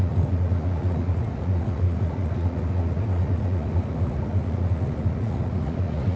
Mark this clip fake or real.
fake